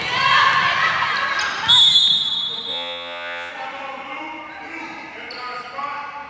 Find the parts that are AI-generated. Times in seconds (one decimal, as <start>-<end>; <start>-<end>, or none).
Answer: 2.7-3.5